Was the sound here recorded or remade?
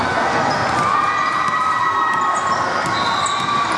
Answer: recorded